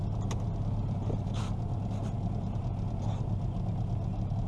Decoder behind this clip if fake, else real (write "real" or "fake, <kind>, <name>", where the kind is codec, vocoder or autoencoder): real